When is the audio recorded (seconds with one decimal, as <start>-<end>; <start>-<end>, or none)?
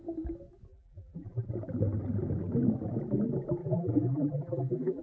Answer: 0.0-0.7; 1.5-3.6